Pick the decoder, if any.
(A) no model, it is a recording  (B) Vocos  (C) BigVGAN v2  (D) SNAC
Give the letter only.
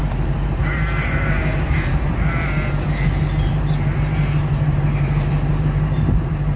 C